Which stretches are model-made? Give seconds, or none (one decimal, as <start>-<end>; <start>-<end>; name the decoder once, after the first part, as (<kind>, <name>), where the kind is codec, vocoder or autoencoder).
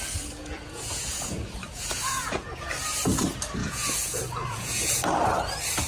0.4-2.7 (vocoder, Vocos); 3.6-5.0